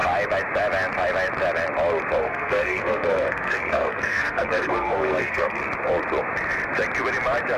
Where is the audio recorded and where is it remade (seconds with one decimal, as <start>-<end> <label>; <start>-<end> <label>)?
0.0-2.2 recorded; 2.2-5.6 remade; 5.6-7.6 recorded